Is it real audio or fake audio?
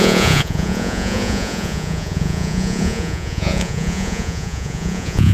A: fake